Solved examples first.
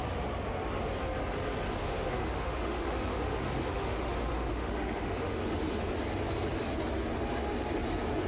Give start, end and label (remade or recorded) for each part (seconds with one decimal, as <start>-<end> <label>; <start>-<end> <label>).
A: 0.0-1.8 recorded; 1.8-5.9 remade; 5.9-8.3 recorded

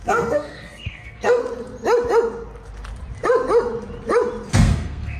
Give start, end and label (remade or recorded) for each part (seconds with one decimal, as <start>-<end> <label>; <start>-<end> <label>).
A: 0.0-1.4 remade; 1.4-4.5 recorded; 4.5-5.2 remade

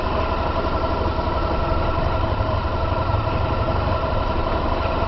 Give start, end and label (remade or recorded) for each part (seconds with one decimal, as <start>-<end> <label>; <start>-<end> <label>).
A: 0.0-1.7 recorded; 1.7-3.3 remade; 3.3-5.1 recorded

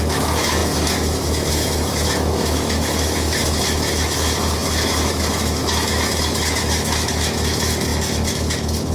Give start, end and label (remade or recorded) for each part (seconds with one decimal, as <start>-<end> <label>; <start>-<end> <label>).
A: 0.0-8.9 remade

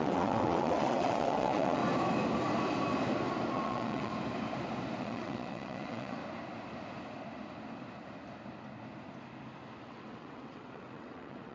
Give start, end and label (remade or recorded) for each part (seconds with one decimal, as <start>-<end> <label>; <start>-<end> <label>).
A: 0.0-1.8 remade; 1.8-3.5 recorded; 3.5-4.1 remade; 4.1-5.0 recorded; 5.0-6.2 remade; 6.2-9.8 recorded; 9.8-11.5 remade

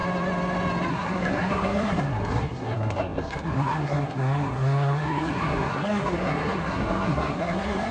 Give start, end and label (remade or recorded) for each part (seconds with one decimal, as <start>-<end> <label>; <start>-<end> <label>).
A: 0.0-0.9 recorded; 0.9-7.9 remade